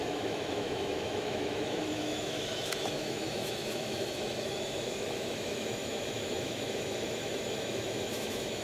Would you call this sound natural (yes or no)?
no